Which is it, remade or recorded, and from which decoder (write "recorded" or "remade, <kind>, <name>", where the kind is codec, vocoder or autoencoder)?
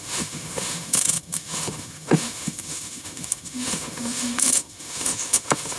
remade, autoencoder, DAC-VAE